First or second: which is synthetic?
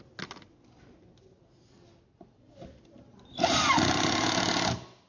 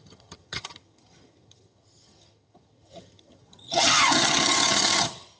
second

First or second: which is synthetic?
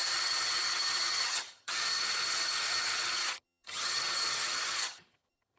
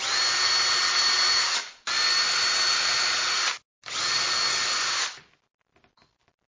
first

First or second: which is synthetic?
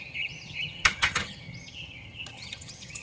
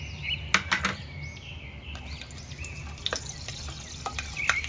first